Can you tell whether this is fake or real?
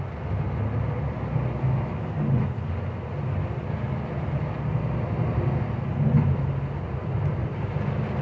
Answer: real